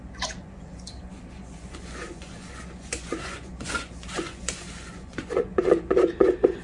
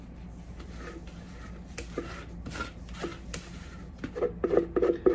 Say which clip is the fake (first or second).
first